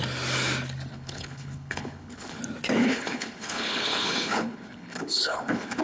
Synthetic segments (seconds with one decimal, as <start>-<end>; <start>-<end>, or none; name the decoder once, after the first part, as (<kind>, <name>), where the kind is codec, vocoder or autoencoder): 0.9-2.4 (codec, HILCodec); 2.8-5.8